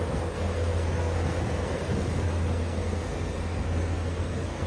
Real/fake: fake